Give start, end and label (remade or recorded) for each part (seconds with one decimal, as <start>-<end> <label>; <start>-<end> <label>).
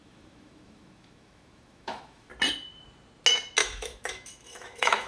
0.0-2.3 remade; 2.3-3.6 recorded; 3.6-5.1 remade